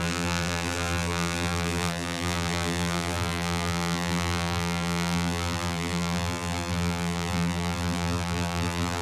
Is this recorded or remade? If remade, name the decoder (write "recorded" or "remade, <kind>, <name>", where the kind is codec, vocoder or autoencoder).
remade, vocoder, BigVGAN v2